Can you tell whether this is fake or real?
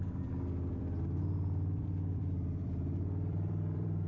fake